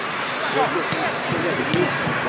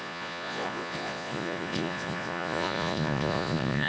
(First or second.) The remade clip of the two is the second